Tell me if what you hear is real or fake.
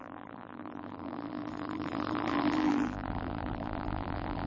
fake